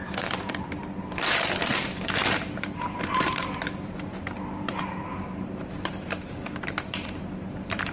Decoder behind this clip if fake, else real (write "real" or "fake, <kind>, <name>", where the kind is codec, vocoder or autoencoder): fake, vocoder, BigVGAN v2